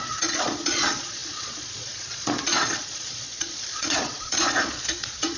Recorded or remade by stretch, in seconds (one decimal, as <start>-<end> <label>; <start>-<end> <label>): 0.0-5.4 remade